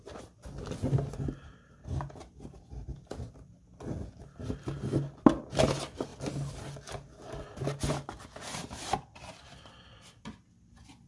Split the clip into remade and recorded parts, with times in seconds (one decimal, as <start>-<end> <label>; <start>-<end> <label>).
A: 0.0-11.1 recorded